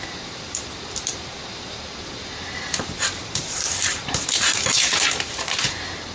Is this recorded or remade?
remade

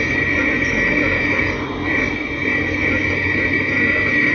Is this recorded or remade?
recorded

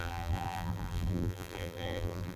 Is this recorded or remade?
remade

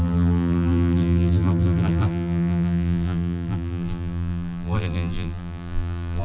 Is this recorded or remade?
remade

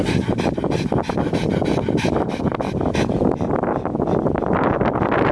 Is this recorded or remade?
recorded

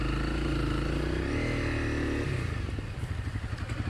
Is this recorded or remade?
recorded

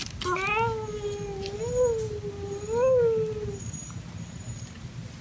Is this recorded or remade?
recorded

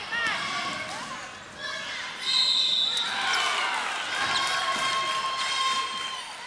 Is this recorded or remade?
recorded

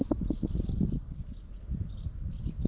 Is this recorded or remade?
recorded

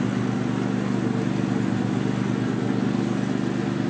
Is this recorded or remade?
recorded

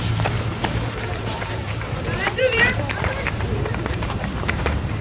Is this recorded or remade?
remade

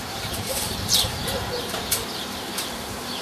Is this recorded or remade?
remade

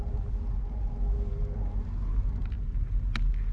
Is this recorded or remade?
recorded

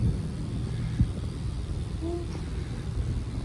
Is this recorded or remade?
recorded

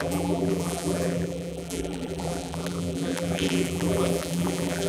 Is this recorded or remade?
remade